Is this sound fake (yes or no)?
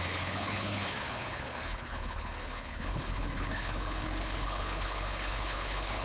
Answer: yes